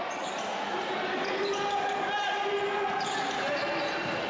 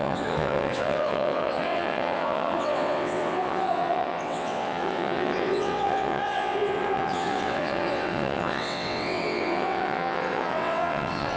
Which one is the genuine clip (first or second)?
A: first